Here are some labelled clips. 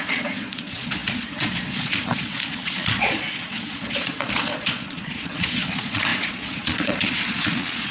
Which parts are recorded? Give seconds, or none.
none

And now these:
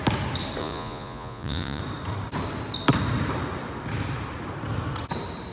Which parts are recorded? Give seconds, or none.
0.0-0.6; 1.8-5.5

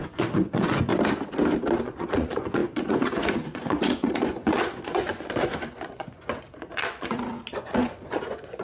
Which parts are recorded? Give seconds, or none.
0.9-1.8

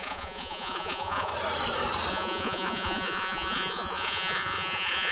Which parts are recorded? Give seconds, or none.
1.3-2.1

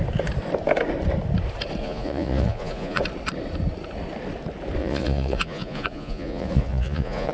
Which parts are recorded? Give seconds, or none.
0.0-1.8; 3.0-4.8

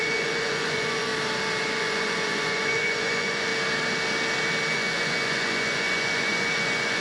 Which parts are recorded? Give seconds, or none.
1.1-1.6; 3.5-4.7

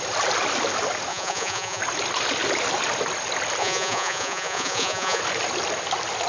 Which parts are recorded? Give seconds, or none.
0.0-1.1; 1.8-3.6; 5.2-6.3

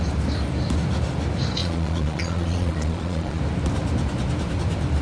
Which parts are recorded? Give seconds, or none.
0.0-1.6; 3.4-5.0